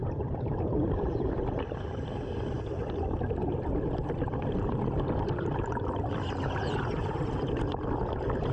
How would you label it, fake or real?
real